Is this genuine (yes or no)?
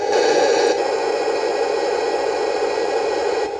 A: no